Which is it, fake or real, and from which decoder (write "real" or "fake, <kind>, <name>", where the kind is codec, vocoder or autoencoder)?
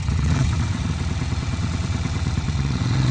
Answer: fake, vocoder, WaveNeXt